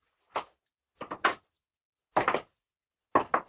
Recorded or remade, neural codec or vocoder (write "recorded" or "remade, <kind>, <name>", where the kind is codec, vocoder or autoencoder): recorded